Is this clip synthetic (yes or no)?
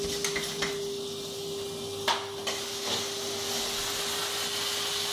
no